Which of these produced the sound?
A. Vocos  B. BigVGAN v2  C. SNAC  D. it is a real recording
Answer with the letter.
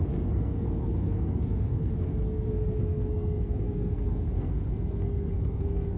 C